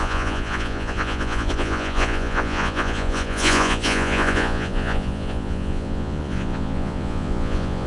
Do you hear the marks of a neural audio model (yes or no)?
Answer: yes